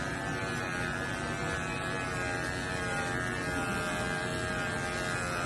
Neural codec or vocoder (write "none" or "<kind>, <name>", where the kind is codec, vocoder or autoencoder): none